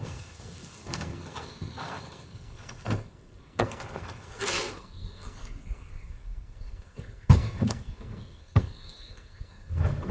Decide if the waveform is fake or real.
fake